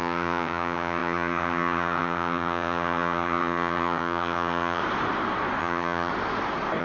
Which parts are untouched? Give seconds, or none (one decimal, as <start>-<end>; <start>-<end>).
4.8-5.6; 6.1-6.8